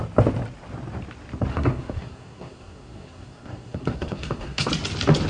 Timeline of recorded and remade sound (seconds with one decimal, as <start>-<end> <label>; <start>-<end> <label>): 0.0-1.5 recorded; 1.5-4.7 remade; 4.7-5.3 recorded